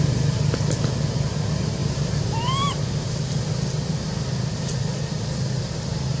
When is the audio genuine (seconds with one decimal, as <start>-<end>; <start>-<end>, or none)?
0.0-1.8; 3.1-3.9; 4.7-6.2